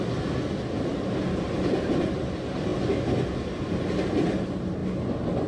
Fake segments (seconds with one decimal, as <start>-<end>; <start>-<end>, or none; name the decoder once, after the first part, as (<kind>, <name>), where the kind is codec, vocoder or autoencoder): none